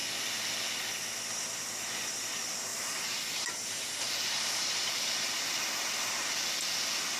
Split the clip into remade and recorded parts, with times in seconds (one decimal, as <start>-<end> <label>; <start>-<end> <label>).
0.0-2.7 recorded; 2.7-5.4 remade; 5.4-7.2 recorded